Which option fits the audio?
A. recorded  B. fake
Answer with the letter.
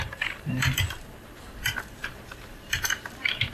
B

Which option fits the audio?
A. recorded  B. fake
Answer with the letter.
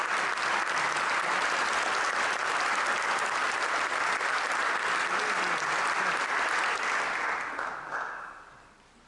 A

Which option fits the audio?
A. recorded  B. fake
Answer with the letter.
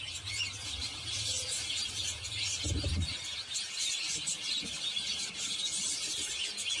A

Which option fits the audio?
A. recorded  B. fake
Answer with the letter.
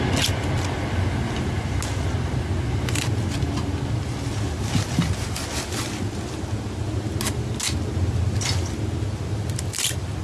A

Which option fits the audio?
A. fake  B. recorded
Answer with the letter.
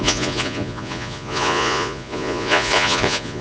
A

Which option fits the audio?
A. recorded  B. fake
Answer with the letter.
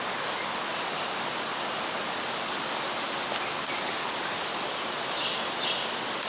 A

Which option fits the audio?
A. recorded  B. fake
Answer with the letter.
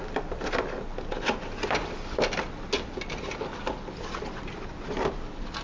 A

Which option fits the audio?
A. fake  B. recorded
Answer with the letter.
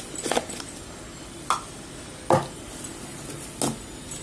B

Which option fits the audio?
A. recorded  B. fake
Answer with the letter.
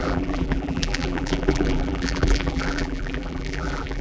B